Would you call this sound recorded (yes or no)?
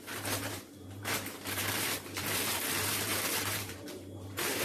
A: no